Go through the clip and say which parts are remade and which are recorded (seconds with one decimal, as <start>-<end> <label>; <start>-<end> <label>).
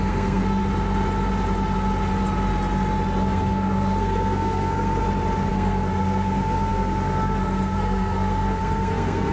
0.0-0.6 remade; 0.6-3.2 recorded; 3.2-5.0 remade; 5.0-5.5 recorded; 5.5-9.3 remade